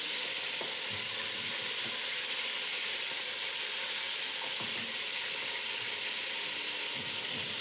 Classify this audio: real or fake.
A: real